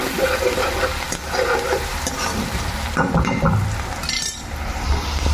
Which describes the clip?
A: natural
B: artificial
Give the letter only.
B